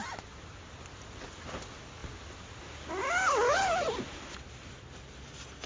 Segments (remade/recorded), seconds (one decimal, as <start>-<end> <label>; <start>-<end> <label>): 0.0-5.7 recorded